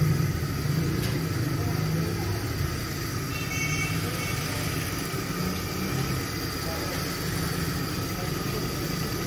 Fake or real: real